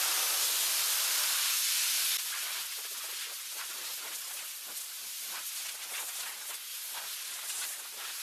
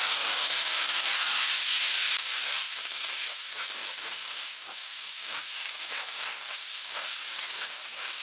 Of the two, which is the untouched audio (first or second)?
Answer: first